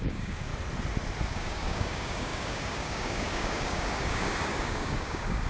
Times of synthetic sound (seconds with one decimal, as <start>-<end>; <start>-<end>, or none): 0.0-0.5; 1.3-5.5